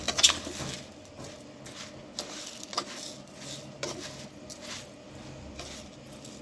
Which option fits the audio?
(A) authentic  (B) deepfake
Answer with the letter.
A